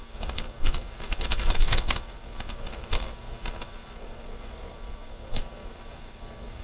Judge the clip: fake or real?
fake